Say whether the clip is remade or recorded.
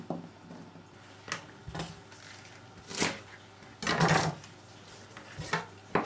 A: recorded